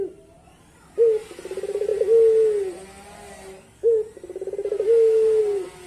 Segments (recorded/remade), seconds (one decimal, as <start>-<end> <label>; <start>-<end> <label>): 0.0-5.9 recorded